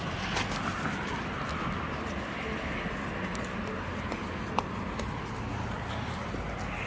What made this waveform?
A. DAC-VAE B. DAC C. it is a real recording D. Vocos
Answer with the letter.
C